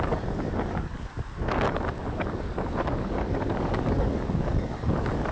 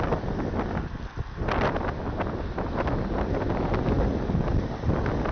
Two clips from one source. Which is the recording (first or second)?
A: second